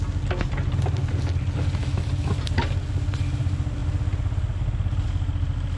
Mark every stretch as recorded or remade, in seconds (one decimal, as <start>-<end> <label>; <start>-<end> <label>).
0.0-5.8 recorded